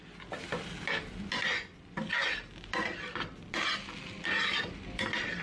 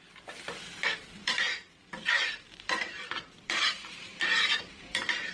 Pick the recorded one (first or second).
first